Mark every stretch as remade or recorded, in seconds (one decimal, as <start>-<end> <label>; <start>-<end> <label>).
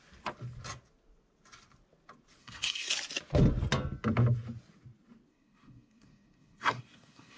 0.0-2.4 recorded; 2.4-2.9 remade; 2.9-5.3 recorded; 5.3-7.4 remade